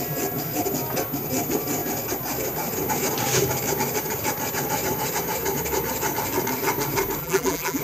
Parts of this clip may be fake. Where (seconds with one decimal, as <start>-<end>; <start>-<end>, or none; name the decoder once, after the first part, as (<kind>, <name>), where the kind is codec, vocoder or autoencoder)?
7.2-7.8 (vocoder, BigVGAN v2)